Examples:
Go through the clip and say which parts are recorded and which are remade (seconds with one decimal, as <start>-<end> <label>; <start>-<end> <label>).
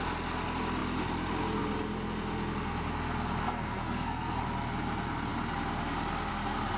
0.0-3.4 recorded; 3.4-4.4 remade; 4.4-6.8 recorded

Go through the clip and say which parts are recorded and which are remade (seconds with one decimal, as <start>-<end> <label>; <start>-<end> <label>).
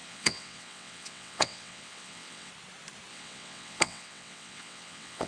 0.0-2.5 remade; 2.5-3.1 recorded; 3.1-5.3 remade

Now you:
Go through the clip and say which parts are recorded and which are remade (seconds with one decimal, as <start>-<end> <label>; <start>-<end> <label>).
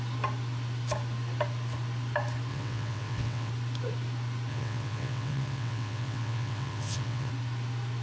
0.0-2.5 recorded; 2.5-3.5 remade; 3.5-4.5 recorded; 4.5-7.3 remade; 7.3-8.0 recorded